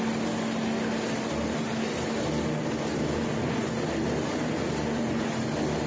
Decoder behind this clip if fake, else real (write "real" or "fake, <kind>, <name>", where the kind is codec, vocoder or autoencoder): real